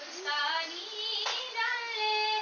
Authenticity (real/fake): real